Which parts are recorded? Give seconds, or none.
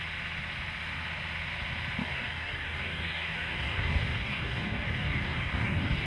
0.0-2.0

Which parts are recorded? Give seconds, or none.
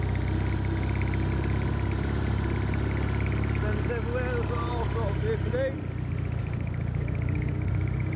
0.0-6.4